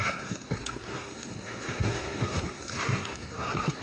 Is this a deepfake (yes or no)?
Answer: yes